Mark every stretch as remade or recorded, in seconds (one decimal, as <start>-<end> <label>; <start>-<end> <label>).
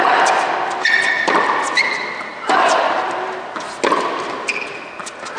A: 0.0-5.4 recorded